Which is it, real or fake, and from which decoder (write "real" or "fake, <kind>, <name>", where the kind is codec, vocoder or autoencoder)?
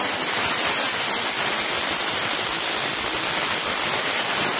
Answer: real